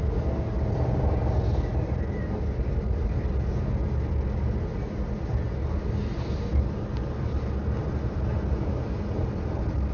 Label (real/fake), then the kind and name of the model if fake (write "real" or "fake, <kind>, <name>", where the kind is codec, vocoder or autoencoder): real